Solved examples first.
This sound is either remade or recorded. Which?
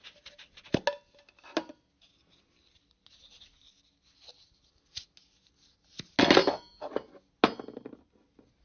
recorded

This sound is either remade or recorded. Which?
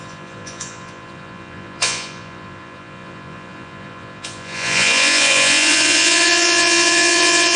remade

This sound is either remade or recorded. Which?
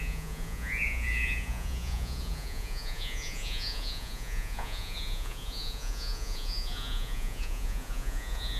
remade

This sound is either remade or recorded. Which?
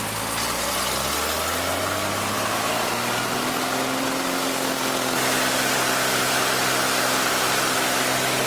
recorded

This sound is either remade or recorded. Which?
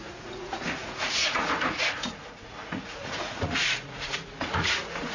remade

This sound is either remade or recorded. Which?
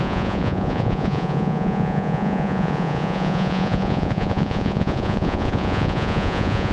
remade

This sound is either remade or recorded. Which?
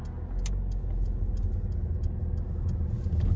recorded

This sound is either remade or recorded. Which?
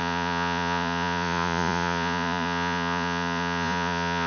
remade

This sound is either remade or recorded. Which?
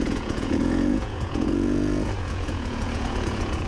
remade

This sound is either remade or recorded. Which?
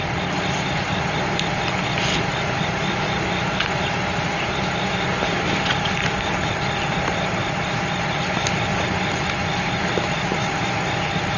recorded